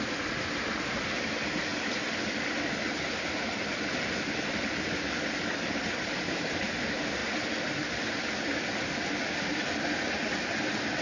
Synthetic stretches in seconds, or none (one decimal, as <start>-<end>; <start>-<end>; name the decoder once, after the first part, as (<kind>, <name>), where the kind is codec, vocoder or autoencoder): none